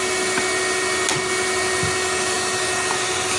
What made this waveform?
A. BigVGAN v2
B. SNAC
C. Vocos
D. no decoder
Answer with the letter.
D